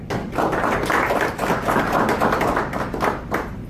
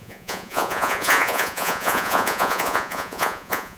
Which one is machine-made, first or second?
second